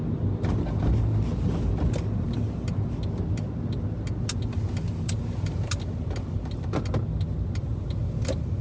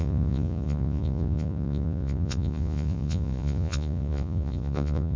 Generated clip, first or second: second